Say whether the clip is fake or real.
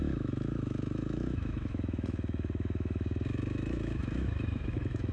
fake